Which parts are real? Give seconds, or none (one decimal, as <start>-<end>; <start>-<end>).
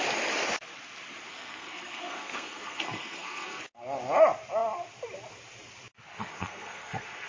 0.0-1.3; 3.6-6.3